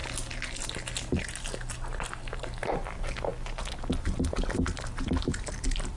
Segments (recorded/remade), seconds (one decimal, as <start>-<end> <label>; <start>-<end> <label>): 0.0-6.0 recorded